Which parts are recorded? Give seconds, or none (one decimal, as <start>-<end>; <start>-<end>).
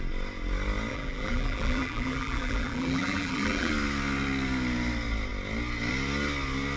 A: 0.0-0.9; 3.7-6.8